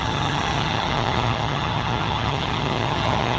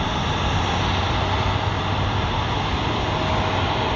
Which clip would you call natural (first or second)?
second